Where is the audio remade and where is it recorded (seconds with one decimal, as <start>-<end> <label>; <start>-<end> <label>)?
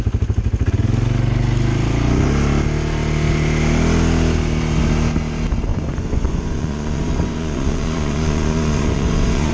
0.0-5.7 recorded; 5.7-9.5 remade